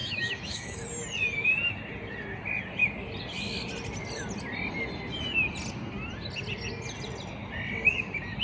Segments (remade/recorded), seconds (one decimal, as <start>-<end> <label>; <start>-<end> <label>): 0.0-0.8 remade; 0.8-8.4 recorded

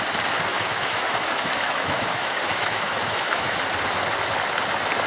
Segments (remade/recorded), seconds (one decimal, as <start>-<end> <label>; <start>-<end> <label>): 0.0-0.5 recorded; 0.5-3.6 remade; 3.6-5.1 recorded